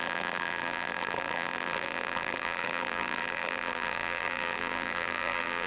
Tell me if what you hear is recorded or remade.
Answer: remade